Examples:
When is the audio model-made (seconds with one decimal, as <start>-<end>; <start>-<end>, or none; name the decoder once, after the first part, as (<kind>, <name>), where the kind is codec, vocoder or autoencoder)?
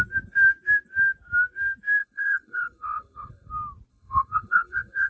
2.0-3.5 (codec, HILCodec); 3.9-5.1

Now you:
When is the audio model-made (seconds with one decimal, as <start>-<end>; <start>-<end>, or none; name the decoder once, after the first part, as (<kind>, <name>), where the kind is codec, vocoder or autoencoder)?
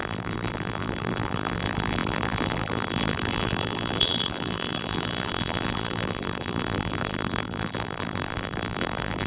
0.0-9.3 (vocoder, BigVGAN v2)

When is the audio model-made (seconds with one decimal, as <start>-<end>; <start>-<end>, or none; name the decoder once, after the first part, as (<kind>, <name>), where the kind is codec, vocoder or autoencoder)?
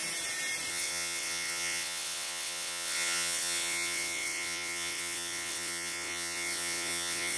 0.7-7.4 (vocoder, WaveNeXt)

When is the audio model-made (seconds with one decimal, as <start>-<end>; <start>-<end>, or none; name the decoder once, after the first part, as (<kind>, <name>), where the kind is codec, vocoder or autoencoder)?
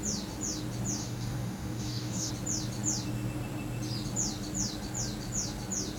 1.0-2.3 (codec, DAC)